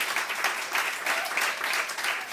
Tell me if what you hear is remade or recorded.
recorded